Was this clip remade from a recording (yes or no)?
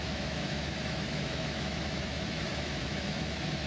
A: yes